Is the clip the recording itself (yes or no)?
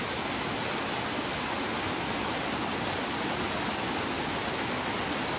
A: yes